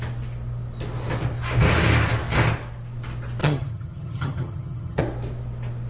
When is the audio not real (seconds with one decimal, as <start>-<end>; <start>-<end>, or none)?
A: 3.4-5.0